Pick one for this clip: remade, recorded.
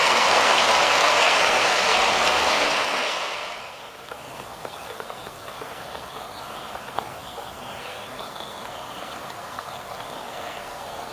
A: remade